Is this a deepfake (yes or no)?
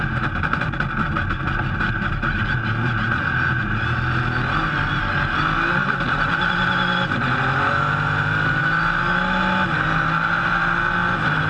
no